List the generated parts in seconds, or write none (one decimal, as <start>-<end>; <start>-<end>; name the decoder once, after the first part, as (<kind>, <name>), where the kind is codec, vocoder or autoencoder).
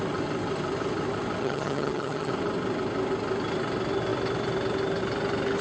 1.4-2.3 (vocoder, HiFi-GAN)